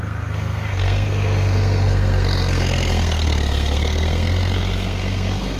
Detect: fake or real fake